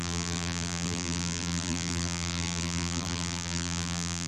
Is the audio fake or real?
fake